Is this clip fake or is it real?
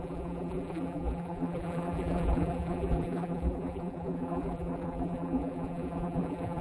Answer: fake